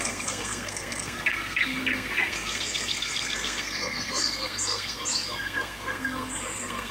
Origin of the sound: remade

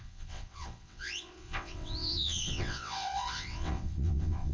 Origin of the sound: remade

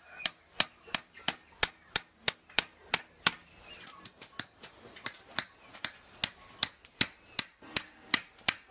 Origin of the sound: recorded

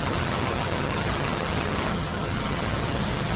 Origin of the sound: remade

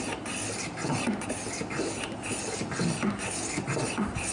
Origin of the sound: recorded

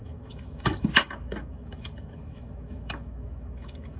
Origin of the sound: remade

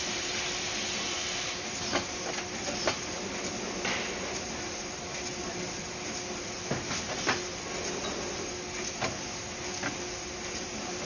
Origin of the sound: recorded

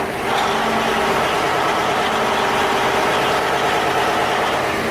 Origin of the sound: recorded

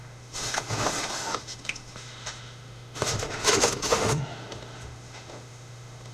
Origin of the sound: remade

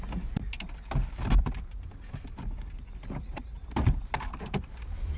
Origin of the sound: recorded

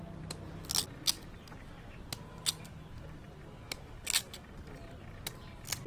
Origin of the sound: recorded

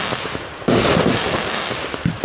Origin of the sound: recorded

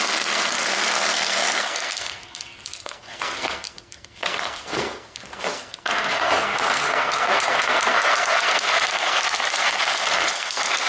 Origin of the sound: remade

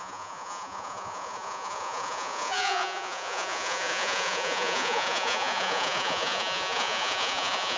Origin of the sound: remade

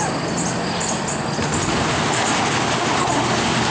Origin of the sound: recorded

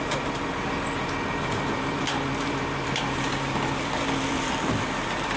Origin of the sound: remade